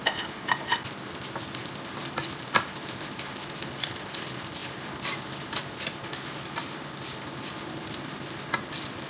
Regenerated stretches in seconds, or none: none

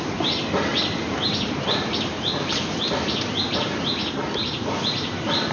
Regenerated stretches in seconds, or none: 0.0-5.5 (vocoder, BigVGAN v2)

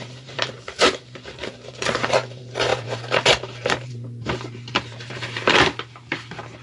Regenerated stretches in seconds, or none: 0.0-6.6 (vocoder, BigVGAN v2)

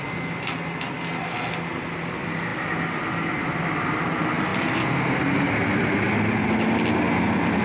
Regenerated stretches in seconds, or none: none

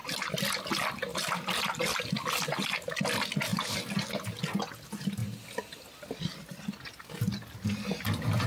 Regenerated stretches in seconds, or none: 3.5-4.3 (vocoder, BigVGAN v2)